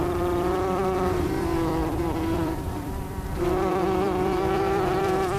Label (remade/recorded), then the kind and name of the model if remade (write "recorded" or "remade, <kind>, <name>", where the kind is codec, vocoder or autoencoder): remade, vocoder, BigVGAN v2